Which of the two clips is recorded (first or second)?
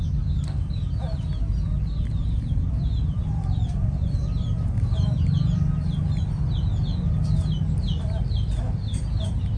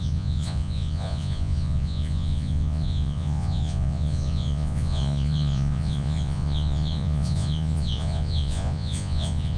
first